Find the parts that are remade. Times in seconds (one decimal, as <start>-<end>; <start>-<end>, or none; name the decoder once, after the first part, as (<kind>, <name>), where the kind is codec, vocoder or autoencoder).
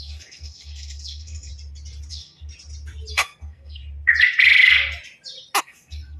0.0-1.5 (codec, SNAC); 2.1-2.5; 3.1-3.8; 5.6-6.2